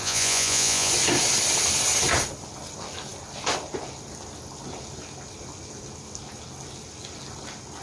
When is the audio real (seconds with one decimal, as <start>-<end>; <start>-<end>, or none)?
0.9-7.8